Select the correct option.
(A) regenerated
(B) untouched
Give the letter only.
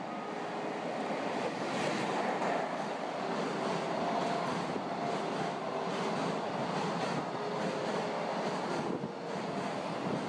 B